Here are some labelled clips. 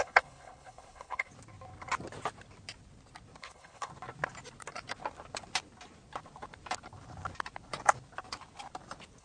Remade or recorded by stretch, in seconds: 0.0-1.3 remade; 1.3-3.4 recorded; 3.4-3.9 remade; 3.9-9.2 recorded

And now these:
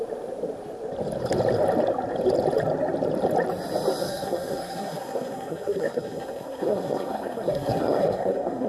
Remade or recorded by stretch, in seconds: 0.0-4.0 recorded; 4.0-8.7 remade

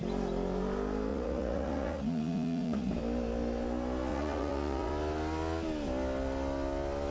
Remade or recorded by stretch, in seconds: 0.0-1.1 recorded; 1.1-2.9 remade; 2.9-4.1 recorded; 4.1-4.9 remade; 4.9-7.1 recorded

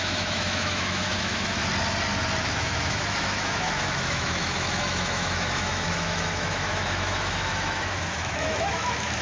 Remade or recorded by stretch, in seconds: 0.0-1.6 remade; 1.6-2.4 recorded; 2.4-9.2 remade

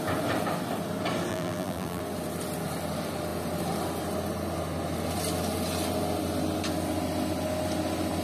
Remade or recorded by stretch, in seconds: 0.0-1.3 recorded; 1.3-2.0 remade; 2.0-8.2 recorded

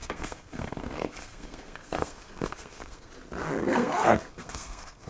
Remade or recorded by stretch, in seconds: 0.0-3.1 remade; 3.1-3.6 recorded; 3.6-5.1 remade